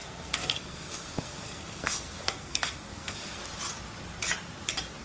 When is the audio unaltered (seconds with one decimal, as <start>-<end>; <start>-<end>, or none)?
3.4-5.0